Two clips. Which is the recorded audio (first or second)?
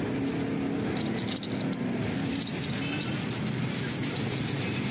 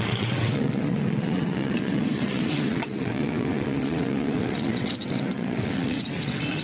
first